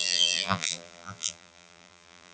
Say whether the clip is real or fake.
fake